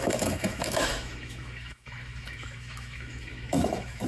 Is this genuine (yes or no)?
no